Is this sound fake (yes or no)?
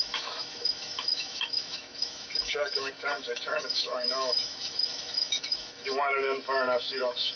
yes